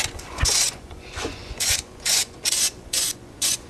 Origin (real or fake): fake